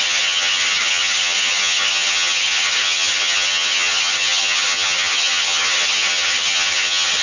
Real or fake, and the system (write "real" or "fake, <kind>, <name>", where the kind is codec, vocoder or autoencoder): fake, vocoder, HiFi-GAN